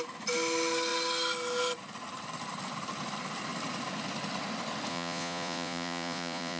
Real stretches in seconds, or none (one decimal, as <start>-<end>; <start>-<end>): 0.0-4.9